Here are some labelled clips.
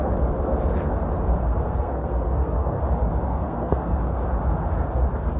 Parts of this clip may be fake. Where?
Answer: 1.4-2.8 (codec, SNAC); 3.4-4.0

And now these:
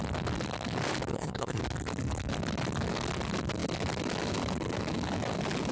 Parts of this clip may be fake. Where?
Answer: 1.1-1.6 (codec, SNAC)

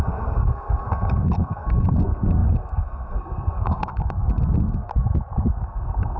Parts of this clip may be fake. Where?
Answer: 0.0-4.9 (codec, SNAC); 5.5-6.2

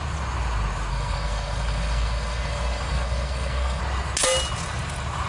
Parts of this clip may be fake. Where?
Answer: 0.9-3.8 (codec, SNAC)

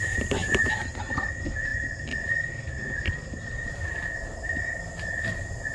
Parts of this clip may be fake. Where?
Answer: none

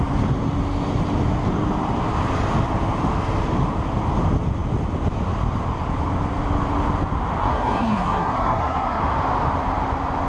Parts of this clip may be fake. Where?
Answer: 7.4-9.0 (codec, SNAC)

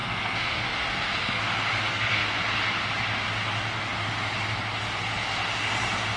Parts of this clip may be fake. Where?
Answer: 0.0-1.4 (codec, SNAC); 1.9-2.4